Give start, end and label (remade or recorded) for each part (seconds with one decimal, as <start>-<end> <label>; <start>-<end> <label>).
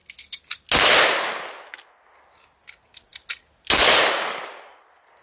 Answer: 0.0-5.2 recorded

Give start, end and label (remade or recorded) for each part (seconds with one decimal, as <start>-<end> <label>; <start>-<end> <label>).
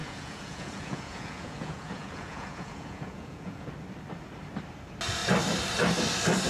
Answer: 0.0-3.7 remade; 3.7-6.5 recorded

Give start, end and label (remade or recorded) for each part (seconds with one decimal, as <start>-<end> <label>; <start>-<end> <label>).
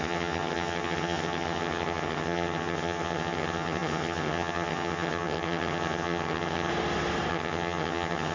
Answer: 0.0-6.7 remade; 6.7-7.3 recorded; 7.3-8.3 remade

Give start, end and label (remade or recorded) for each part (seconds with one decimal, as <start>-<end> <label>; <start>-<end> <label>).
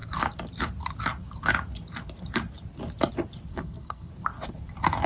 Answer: 0.0-3.5 recorded; 3.5-4.1 remade; 4.1-5.1 recorded